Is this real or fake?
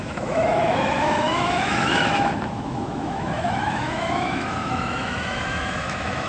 fake